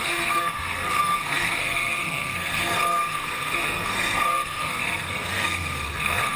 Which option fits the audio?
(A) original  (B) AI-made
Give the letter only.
B